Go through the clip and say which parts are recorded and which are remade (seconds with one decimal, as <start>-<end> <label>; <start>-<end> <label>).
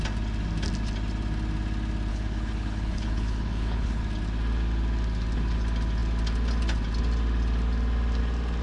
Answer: 0.0-2.1 recorded; 2.1-4.0 remade; 4.0-8.6 recorded